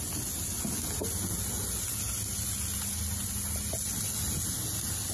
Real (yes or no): yes